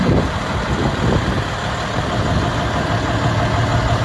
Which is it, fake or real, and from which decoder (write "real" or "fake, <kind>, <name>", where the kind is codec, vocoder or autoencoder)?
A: real